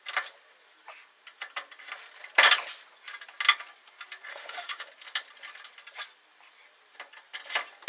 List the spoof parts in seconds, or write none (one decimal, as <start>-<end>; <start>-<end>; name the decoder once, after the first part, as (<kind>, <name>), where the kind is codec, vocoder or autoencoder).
4.3-4.9 (autoencoder, DAC-VAE)

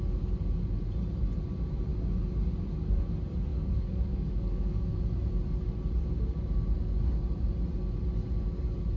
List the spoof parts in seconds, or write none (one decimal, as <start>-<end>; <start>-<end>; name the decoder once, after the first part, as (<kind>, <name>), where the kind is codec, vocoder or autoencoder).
3.5-5.0 (codec, DAC)

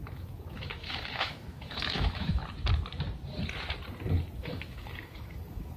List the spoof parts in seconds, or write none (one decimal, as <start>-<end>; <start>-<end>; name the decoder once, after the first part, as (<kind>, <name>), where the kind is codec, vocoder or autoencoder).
0.0-2.4 (autoencoder, DAC-VAE); 4.4-5.8

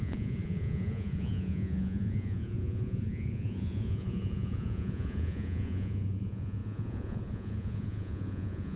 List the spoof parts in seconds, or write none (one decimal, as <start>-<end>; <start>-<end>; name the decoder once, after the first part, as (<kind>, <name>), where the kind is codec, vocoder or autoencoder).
0.0-8.8 (vocoder, Vocos)